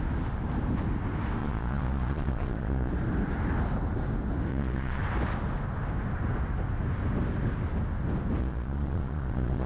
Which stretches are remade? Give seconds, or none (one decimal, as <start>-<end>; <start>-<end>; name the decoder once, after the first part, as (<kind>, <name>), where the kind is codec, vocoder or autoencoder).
1.4-2.9 (vocoder, Vocos); 4.5-5.0; 8.4-9.7